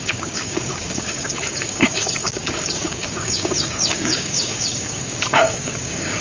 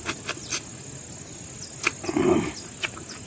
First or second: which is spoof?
first